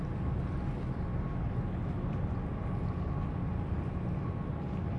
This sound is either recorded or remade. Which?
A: recorded